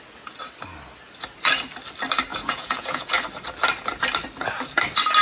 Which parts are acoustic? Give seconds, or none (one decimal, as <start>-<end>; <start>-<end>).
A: 0.0-2.3; 3.2-5.2